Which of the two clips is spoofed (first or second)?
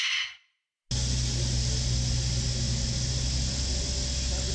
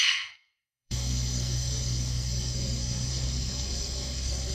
second